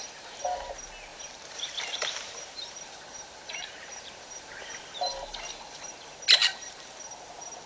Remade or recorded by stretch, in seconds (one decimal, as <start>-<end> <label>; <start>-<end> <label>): 0.0-1.1 recorded; 1.1-4.8 remade; 4.8-6.4 recorded; 6.4-7.0 remade; 7.0-7.7 recorded